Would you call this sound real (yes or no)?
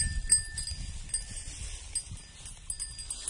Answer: yes